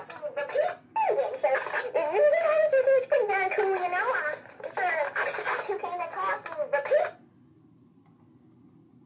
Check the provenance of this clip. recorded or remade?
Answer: recorded